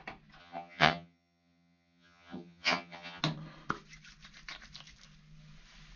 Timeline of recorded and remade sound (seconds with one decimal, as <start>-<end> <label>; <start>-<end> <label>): 0.0-0.4 recorded; 0.4-3.2 remade; 3.2-6.0 recorded